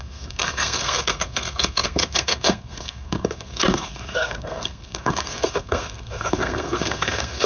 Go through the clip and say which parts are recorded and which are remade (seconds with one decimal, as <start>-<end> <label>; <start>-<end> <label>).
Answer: 0.0-7.5 remade